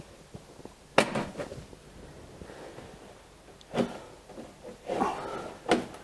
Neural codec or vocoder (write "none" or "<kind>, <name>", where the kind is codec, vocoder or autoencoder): none